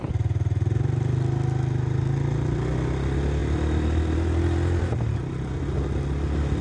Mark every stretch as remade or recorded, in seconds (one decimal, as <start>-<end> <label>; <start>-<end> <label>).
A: 0.0-6.6 recorded